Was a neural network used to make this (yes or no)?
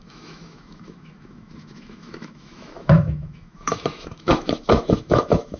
yes